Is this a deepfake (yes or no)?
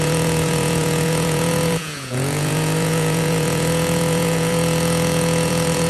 yes